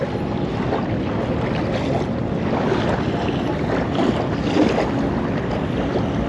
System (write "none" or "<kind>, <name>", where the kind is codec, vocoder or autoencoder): none